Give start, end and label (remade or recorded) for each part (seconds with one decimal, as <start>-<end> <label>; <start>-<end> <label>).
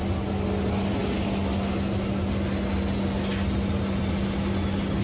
0.0-5.0 recorded